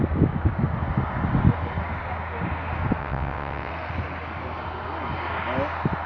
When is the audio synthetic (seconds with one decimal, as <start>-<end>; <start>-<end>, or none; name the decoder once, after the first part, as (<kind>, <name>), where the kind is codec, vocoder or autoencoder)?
3.0-3.7 (vocoder, WaveNeXt)

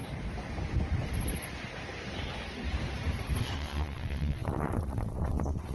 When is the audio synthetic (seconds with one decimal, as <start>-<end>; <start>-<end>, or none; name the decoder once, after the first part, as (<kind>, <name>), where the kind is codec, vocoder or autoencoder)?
3.4-5.7 (vocoder, WaveNeXt)

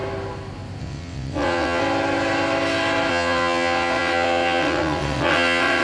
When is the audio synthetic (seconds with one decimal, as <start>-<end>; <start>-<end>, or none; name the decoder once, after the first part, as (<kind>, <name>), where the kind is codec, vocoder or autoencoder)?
0.8-1.8 (vocoder, WaveNeXt); 3.1-5.8

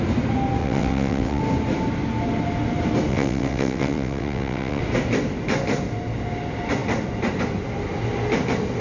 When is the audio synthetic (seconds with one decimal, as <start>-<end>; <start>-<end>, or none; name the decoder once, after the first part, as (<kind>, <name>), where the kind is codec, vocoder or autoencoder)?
0.6-1.4 (vocoder, WaveNeXt); 3.1-4.8

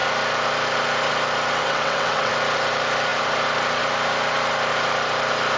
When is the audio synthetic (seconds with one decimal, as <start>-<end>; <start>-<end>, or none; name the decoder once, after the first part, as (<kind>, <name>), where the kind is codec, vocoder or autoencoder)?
1.6-2.3 (vocoder, WaveNeXt)

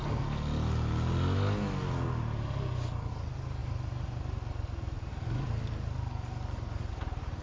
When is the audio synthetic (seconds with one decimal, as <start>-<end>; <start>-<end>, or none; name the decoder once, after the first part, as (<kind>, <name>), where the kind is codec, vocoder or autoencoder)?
none